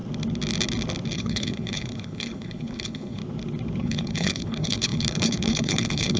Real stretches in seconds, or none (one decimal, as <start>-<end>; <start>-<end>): 0.0-1.1; 3.2-3.8